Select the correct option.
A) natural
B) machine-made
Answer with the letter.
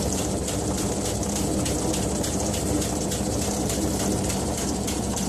B